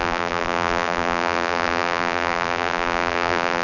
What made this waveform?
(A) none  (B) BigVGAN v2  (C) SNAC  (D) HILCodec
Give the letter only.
B